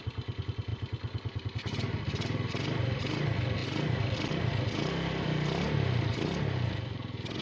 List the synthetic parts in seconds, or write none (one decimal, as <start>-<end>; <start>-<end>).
none